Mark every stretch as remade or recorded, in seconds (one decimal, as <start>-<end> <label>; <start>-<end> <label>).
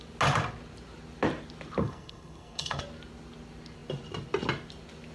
0.0-1.8 recorded; 1.8-2.8 remade; 2.8-5.1 recorded